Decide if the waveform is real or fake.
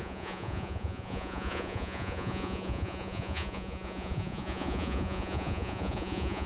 fake